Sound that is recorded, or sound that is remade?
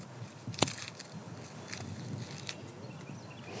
recorded